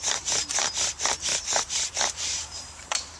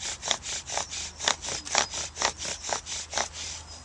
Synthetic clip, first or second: first